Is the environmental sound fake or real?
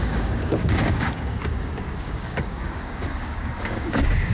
fake